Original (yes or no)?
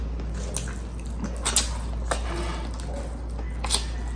yes